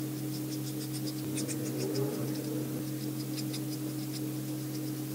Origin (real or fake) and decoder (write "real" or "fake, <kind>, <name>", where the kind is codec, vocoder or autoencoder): real